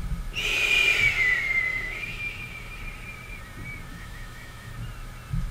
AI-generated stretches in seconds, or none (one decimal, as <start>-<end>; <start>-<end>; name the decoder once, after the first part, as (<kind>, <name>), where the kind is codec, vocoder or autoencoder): 1.7-2.8 (autoencoder, DAC-VAE); 3.9-4.7